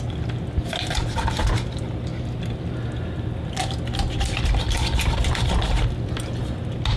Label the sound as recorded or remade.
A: recorded